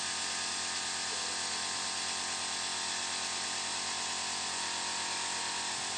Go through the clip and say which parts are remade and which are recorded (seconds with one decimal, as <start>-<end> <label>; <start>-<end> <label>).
0.0-6.0 recorded